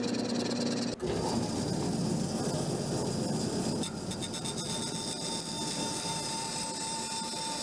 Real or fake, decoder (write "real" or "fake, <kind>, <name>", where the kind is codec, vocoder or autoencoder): real